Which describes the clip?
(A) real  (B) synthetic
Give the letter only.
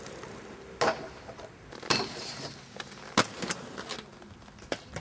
A